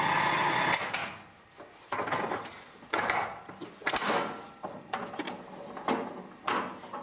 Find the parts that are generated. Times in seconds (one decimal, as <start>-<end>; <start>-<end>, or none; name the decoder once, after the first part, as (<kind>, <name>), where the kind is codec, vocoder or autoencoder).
none